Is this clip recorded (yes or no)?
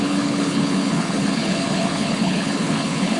no